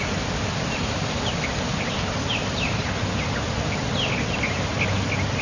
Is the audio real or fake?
real